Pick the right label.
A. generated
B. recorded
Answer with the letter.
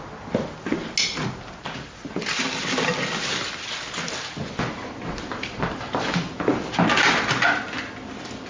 B